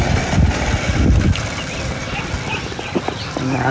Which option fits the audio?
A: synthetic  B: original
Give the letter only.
B